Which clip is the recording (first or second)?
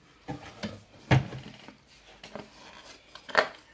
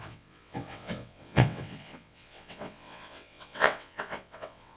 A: first